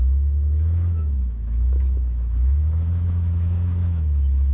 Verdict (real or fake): fake